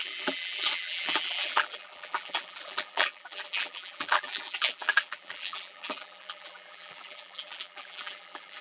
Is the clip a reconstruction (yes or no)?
yes